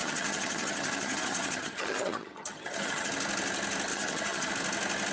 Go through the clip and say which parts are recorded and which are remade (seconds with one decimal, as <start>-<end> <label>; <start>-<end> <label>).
0.0-3.1 remade; 3.1-3.9 recorded; 3.9-4.5 remade; 4.5-5.1 recorded